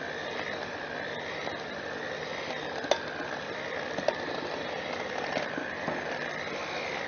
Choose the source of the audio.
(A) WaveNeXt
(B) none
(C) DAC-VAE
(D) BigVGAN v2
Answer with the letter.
B